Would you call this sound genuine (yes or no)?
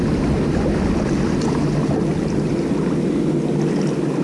yes